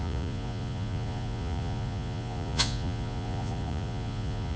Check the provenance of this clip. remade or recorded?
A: remade